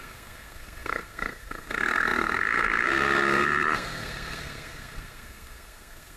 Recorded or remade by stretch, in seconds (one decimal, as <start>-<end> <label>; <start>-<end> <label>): 0.0-6.2 remade